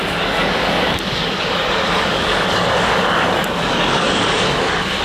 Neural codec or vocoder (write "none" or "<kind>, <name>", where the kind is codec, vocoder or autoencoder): codec, DAC